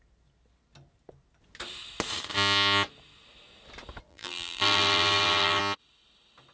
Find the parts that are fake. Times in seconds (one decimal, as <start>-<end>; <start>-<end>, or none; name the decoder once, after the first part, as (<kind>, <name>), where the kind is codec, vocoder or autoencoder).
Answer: 4.1-5.6 (vocoder, BigVGAN v2)